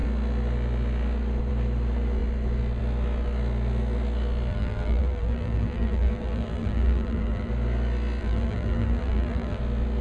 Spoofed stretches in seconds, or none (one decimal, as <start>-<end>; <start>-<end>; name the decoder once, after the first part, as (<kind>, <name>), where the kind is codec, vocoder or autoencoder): 4.5-7.5 (vocoder, BigVGAN v2); 8.2-9.6